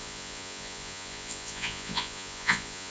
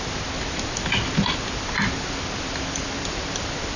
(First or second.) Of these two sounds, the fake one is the first